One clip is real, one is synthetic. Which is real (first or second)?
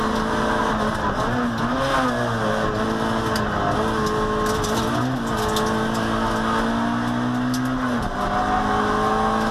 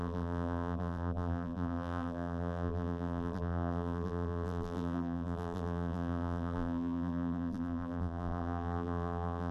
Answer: first